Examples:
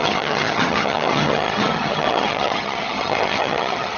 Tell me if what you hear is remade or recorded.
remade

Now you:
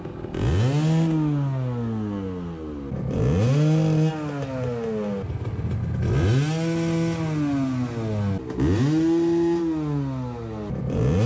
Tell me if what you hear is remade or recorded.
recorded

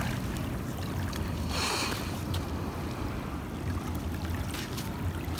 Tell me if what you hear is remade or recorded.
recorded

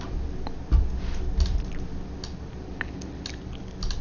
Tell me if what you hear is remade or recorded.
recorded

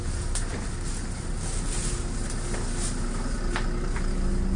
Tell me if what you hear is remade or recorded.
recorded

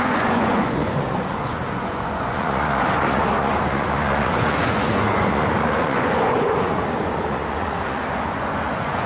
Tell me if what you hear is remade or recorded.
remade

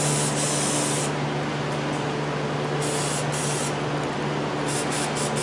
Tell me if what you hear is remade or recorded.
recorded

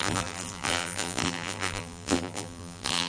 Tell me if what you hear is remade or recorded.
remade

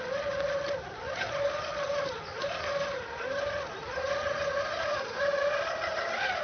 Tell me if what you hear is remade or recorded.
recorded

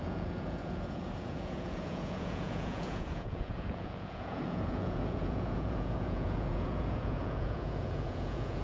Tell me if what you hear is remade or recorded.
remade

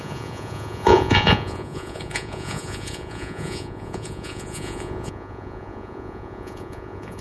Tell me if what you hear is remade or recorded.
remade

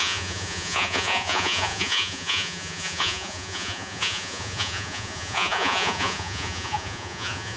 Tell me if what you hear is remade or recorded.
remade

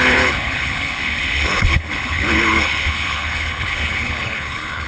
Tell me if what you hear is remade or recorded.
remade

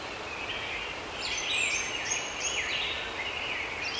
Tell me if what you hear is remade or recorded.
remade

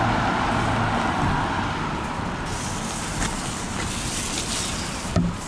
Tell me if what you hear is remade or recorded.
recorded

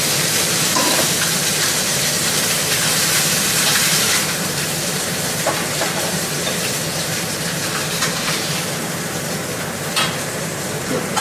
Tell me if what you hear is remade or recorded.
remade